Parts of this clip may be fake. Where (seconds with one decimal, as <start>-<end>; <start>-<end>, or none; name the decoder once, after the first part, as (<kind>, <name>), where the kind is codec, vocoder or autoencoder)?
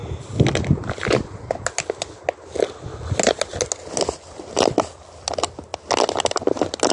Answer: none